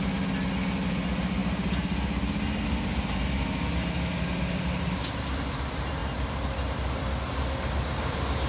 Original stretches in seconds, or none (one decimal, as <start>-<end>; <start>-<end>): 0.0-8.5